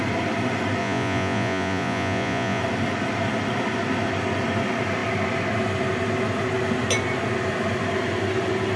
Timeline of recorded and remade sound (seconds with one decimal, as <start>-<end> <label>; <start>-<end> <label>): 0.0-0.8 recorded; 0.8-2.6 remade; 2.6-8.8 recorded